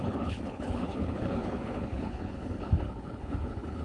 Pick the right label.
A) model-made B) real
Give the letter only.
A